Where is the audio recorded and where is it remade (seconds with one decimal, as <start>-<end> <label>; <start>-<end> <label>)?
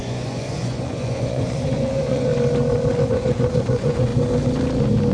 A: 0.0-2.3 remade; 2.3-3.1 recorded; 3.1-4.1 remade; 4.1-5.1 recorded